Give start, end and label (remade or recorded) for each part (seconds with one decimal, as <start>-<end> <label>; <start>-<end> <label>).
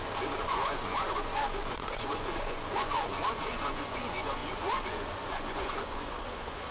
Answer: 0.0-6.7 remade